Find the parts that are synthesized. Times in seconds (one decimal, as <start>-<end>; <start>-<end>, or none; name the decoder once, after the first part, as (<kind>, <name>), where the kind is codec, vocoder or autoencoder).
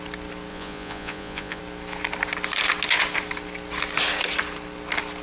0.5-1.6 (vocoder, Vocos)